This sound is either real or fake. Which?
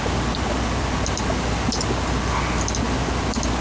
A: real